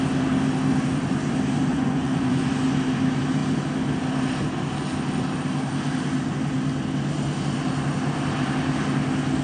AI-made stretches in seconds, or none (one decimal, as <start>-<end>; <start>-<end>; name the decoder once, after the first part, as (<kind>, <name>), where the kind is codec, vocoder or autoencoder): 1.7-2.5 (vocoder, Vocos)